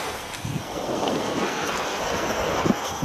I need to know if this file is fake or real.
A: fake